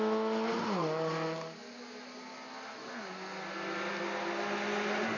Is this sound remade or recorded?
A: recorded